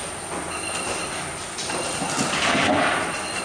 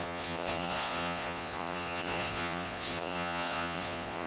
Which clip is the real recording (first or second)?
first